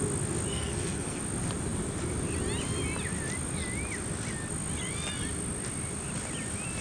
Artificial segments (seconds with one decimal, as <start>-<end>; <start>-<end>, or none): 0.5-1.2